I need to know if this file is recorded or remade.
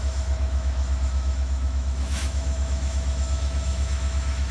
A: remade